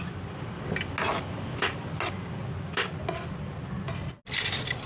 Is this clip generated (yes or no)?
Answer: no